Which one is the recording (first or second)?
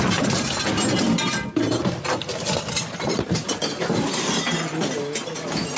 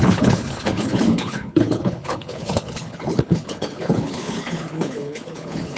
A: first